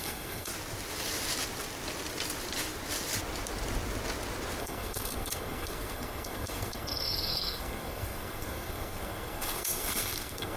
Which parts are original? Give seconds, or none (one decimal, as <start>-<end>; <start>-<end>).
0.5-4.6